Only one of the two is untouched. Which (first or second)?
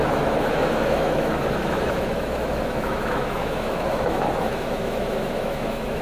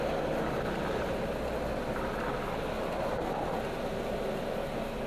second